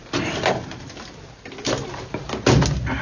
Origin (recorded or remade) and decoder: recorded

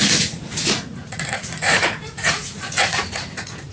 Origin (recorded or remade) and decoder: remade, vocoder, Vocos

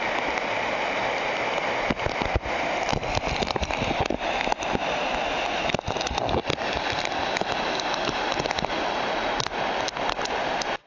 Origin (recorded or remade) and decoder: recorded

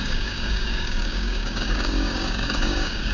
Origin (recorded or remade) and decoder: remade, codec, DAC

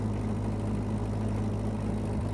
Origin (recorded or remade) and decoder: recorded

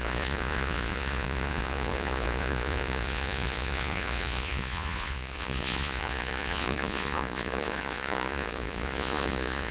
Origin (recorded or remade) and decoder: remade, vocoder, Vocos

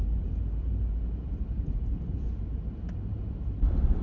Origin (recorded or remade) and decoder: remade, vocoder, BigVGAN v2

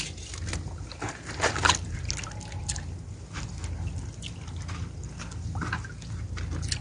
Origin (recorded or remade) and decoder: recorded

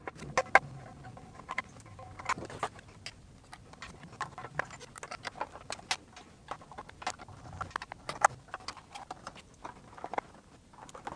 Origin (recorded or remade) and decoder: recorded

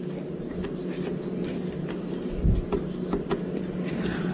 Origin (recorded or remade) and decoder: recorded